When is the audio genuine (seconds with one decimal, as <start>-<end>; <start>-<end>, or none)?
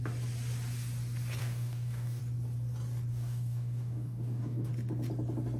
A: 0.0-1.4; 2.2-3.1; 4.7-5.6